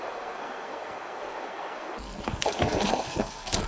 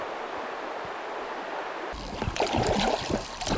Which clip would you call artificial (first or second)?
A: first